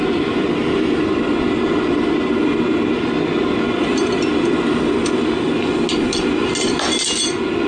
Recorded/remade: recorded